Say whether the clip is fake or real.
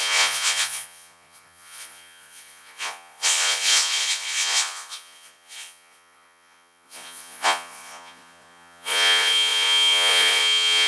fake